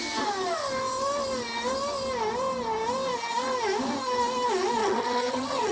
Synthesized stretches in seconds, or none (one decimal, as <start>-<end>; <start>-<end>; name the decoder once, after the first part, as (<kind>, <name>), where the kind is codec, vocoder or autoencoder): 4.8-5.7 (vocoder, HiFi-GAN)